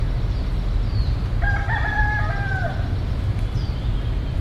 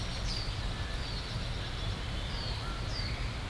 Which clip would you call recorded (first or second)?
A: second